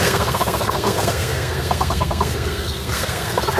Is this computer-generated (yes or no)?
yes